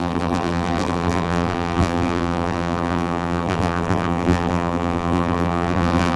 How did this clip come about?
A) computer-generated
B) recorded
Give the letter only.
A